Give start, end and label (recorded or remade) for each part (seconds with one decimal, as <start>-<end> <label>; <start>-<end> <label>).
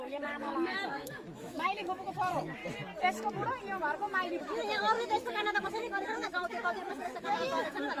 0.0-2.6 remade; 2.6-4.4 recorded; 4.4-8.0 remade